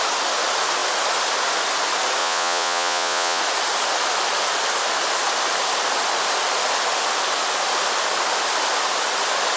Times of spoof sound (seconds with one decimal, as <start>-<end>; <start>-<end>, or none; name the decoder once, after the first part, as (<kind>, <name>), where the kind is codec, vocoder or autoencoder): 2.2-3.4 (vocoder, Vocos)